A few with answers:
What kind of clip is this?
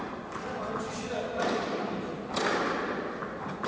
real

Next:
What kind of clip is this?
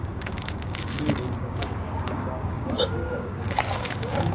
fake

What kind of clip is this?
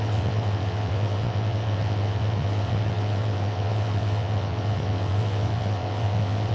fake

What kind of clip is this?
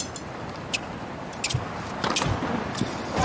real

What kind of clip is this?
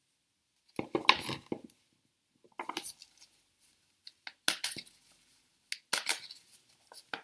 real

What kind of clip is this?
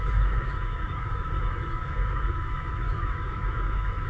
fake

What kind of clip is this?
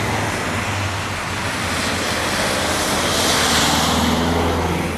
real